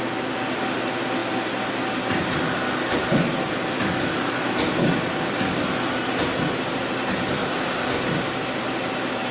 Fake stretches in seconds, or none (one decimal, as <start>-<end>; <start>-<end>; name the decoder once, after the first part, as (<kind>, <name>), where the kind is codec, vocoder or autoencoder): 4.8-5.6 (codec, DAC); 7.4-8.1